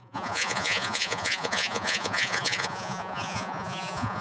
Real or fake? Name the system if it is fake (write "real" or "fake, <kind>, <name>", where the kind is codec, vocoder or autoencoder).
fake, vocoder, Vocos